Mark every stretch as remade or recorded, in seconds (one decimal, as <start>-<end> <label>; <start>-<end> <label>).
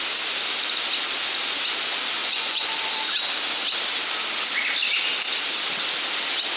0.0-2.2 recorded; 2.2-2.7 remade; 2.7-6.6 recorded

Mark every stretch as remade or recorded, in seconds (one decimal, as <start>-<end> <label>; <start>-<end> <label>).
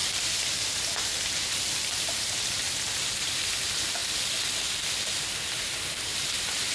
0.0-4.0 remade; 4.0-5.2 recorded; 5.2-6.7 remade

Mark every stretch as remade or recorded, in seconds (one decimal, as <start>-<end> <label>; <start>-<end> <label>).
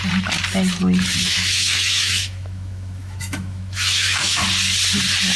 0.0-1.2 recorded; 1.2-4.4 remade; 4.4-5.4 recorded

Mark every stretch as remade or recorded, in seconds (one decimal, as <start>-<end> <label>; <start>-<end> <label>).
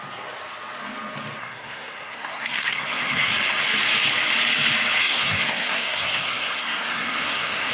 0.0-1.4 recorded; 1.4-3.3 remade; 3.3-5.0 recorded; 5.0-7.7 remade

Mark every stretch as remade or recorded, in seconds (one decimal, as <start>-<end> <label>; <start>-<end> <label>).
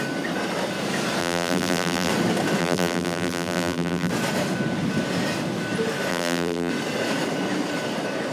0.0-1.2 recorded; 1.2-2.1 remade; 2.1-2.6 recorded; 2.6-4.1 remade; 4.1-6.1 recorded; 6.1-6.7 remade; 6.7-8.3 recorded